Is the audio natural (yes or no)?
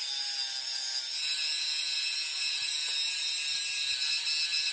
yes